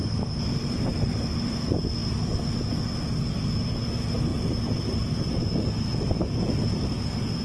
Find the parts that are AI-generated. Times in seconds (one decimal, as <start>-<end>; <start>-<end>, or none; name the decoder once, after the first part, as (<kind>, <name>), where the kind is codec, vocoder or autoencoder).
none

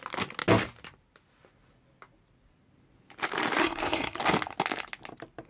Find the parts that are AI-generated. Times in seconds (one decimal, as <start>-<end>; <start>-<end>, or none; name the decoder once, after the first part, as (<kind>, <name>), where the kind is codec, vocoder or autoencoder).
3.6-4.2 (codec, SNAC)

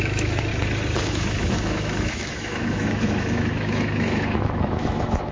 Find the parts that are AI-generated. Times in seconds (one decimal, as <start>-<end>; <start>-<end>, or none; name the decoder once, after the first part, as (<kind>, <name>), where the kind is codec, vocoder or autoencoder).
0.0-0.5 (autoencoder, DAC-VAE); 1.1-5.3

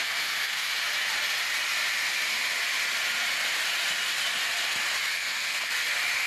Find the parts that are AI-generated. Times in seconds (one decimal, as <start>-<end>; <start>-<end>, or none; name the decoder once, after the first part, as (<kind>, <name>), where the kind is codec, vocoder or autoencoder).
0.0-0.7 (codec, SNAC); 5.1-5.7

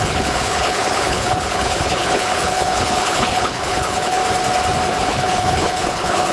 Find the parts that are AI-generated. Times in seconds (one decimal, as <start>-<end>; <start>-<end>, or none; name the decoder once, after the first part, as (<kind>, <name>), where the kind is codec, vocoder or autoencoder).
0.0-4.2 (codec, HILCodec); 5.0-6.3